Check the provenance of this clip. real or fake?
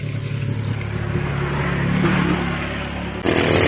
real